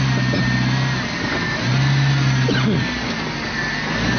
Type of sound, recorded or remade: recorded